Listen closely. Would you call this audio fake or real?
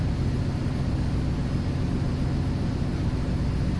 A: real